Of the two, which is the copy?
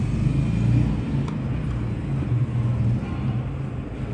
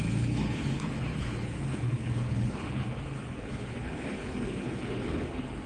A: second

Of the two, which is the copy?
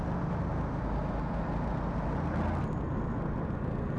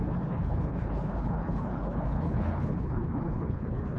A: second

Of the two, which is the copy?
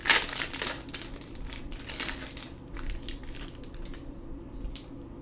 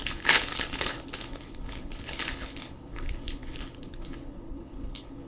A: second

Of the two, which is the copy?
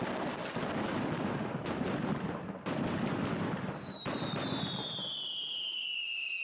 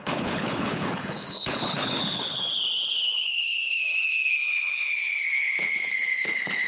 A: second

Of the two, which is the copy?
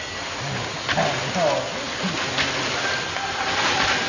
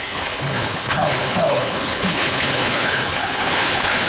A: second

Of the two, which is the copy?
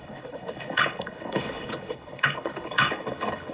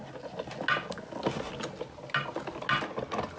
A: first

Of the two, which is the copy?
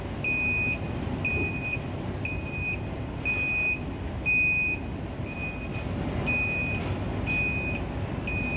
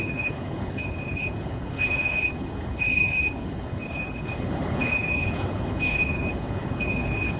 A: second